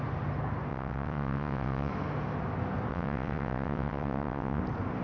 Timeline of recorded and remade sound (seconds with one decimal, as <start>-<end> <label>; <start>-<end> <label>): 0.0-0.7 recorded; 0.7-1.9 remade; 1.9-2.9 recorded; 2.9-4.6 remade; 4.6-5.0 recorded